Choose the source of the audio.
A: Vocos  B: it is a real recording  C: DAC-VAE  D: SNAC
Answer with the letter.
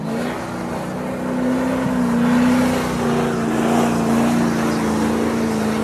B